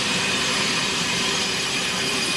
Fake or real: fake